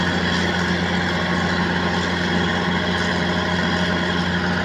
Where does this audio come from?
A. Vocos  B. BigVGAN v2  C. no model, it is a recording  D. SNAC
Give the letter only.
C